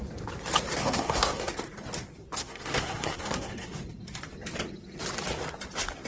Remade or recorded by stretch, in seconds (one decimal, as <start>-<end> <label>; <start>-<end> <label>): 0.0-0.8 recorded; 0.8-1.5 remade; 1.5-2.4 recorded; 2.4-3.8 remade; 3.8-6.1 recorded

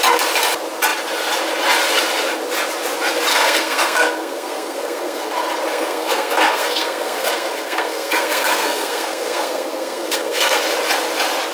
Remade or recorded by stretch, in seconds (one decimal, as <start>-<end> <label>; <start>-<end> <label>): 0.0-3.3 recorded; 3.3-5.3 remade; 5.3-5.7 recorded; 5.7-10.6 remade; 10.6-11.5 recorded

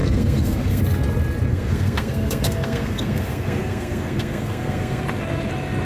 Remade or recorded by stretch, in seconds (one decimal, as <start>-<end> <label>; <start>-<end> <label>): 0.0-0.8 remade; 0.8-1.5 recorded; 1.5-5.0 remade; 5.0-5.8 recorded

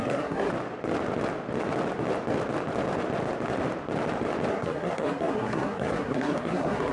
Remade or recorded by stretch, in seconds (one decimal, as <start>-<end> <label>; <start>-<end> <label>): 0.0-0.5 remade; 0.5-4.5 recorded; 4.5-6.9 remade

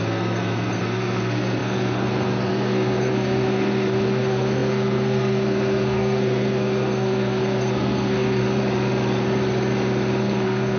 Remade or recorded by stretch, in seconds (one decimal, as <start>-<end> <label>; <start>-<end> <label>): 0.0-8.4 remade; 8.4-10.2 recorded; 10.2-10.8 remade

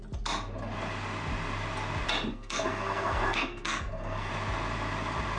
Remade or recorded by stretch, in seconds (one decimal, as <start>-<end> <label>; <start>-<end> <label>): 0.0-2.3 recorded; 2.3-4.3 remade; 4.3-5.4 recorded

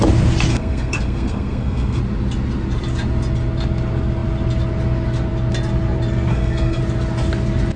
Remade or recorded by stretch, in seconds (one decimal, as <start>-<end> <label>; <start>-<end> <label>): 0.0-0.5 recorded; 0.5-2.0 remade; 2.0-6.3 recorded; 6.3-6.8 remade; 6.8-7.8 recorded